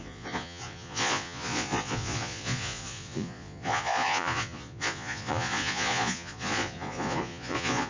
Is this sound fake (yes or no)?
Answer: yes